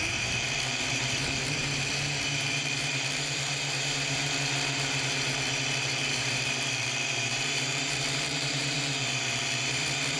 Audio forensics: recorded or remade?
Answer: remade